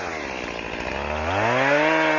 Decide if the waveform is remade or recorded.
recorded